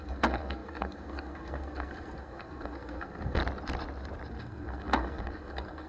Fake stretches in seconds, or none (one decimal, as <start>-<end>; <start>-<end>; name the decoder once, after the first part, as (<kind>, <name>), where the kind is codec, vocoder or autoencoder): 0.0-3.4 (codec, SNAC); 4.3-5.9